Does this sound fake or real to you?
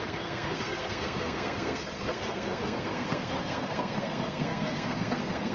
fake